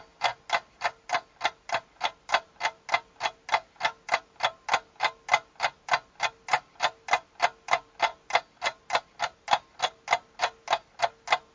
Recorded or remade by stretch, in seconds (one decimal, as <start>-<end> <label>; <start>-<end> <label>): 0.0-11.5 recorded